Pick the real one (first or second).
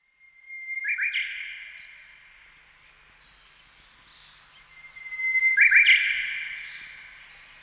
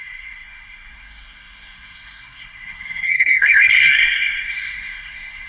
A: first